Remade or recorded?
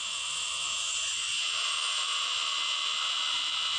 recorded